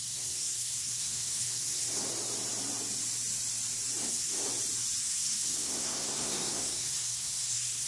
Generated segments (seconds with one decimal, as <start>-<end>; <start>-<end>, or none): 0.0-2.1; 4.0-4.4; 5.0-7.9